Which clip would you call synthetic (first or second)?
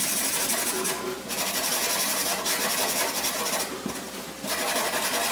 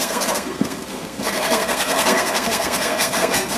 second